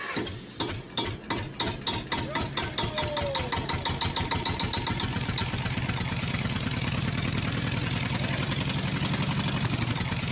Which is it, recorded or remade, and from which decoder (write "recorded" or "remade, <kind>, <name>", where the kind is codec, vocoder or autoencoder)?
recorded